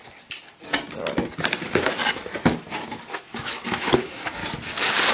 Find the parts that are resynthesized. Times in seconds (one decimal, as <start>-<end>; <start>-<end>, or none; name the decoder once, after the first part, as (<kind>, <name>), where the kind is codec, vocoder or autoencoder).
3.1-4.4 (autoencoder, DAC-VAE)